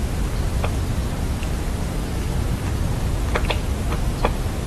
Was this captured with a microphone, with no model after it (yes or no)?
yes